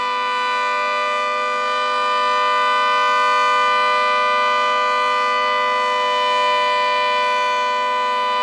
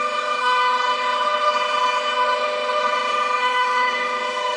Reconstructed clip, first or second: second